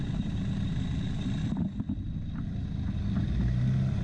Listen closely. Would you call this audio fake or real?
real